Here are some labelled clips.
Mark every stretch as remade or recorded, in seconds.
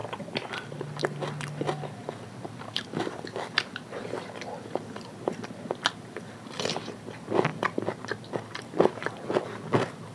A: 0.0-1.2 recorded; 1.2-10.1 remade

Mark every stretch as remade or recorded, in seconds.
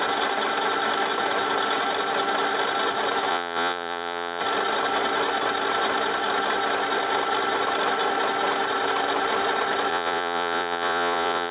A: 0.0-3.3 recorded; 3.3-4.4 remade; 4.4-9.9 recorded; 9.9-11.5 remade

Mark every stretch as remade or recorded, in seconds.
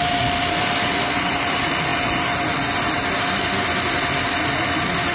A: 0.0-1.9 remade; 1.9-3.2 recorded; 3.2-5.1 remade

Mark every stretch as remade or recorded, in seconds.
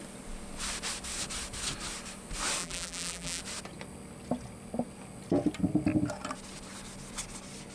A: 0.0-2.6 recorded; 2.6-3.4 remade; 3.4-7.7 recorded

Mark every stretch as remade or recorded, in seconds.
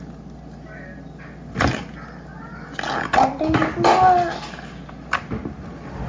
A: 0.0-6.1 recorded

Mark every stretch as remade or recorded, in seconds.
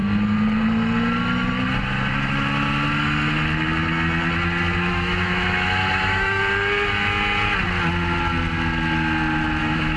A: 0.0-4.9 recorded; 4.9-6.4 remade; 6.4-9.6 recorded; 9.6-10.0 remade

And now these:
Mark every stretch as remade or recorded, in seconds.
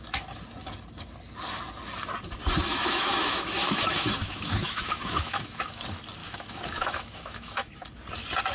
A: 0.0-2.8 recorded; 2.8-5.8 remade; 5.8-6.2 recorded; 6.2-7.7 remade; 7.7-8.5 recorded